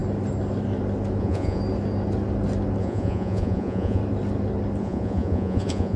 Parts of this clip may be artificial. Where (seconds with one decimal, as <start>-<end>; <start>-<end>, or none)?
1.2-1.6; 2.8-4.0; 4.8-6.0